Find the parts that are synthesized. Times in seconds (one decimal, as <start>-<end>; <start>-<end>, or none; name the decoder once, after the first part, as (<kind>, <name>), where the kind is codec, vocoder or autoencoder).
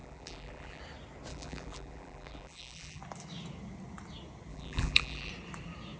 0.0-0.8 (vocoder, BigVGAN v2); 1.3-3.0; 4.5-5.3